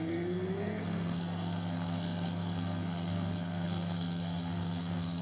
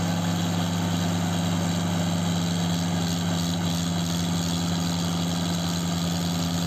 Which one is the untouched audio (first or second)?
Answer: second